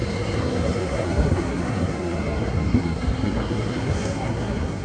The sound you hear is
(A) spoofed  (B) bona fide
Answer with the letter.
A